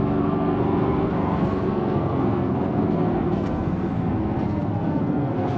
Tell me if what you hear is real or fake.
fake